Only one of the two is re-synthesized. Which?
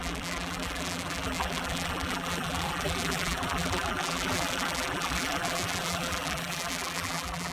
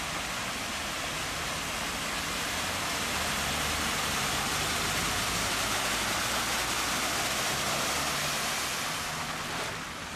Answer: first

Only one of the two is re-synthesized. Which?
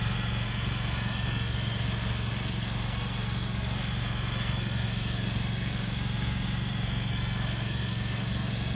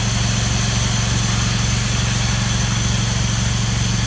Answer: first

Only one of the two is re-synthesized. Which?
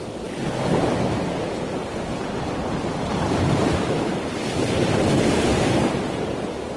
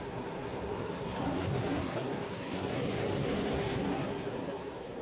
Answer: second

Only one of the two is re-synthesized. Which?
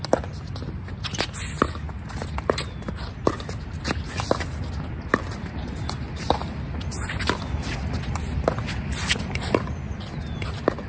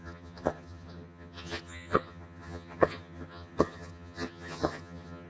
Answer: second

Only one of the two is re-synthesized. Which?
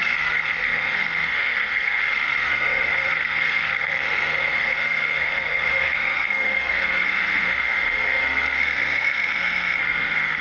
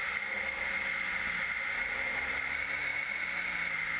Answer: first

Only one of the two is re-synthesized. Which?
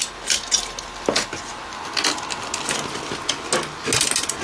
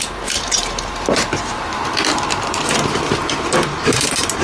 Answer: second